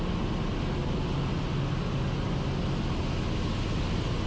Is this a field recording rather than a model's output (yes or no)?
yes